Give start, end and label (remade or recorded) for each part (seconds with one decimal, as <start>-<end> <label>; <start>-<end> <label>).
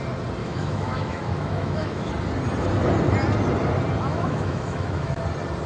0.0-0.4 recorded; 0.4-2.1 remade; 2.1-4.1 recorded; 4.1-5.2 remade; 5.2-5.7 recorded